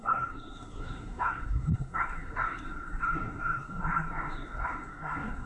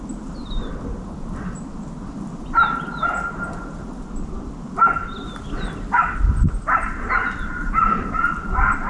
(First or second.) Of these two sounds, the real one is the second